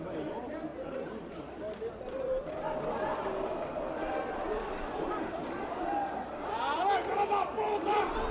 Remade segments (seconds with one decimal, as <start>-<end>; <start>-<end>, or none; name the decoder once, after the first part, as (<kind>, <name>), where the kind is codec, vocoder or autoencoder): none